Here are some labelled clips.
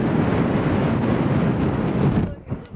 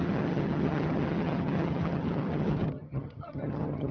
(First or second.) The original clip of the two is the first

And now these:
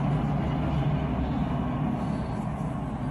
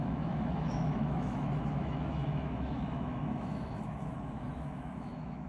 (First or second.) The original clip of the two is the first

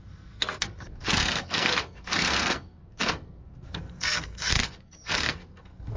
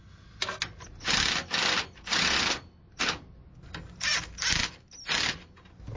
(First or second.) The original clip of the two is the second